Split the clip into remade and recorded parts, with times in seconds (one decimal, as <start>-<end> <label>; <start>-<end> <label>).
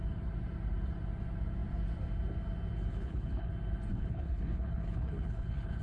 0.0-2.9 recorded; 2.9-3.5 remade; 3.5-3.9 recorded; 3.9-5.8 remade